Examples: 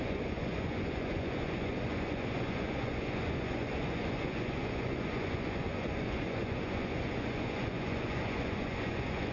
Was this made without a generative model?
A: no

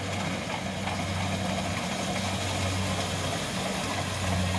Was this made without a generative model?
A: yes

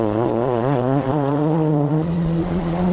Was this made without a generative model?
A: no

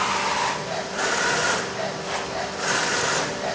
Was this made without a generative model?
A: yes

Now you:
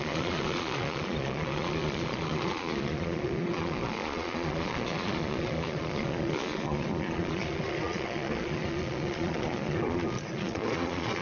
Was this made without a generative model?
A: no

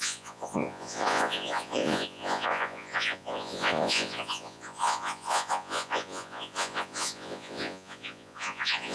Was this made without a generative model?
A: no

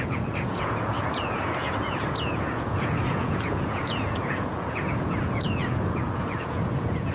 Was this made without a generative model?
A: no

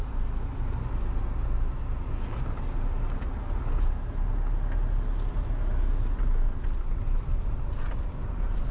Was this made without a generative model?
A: yes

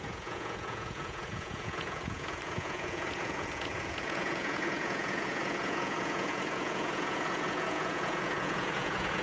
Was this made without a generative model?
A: no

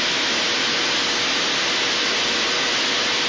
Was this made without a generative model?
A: yes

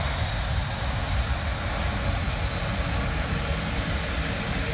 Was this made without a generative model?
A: yes